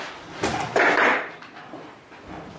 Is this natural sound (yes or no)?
yes